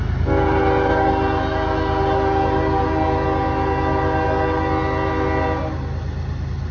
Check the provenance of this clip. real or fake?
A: real